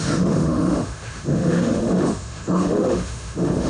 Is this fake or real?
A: fake